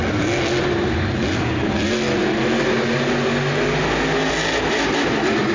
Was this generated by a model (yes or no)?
no